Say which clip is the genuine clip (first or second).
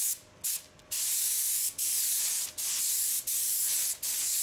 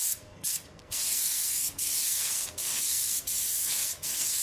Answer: first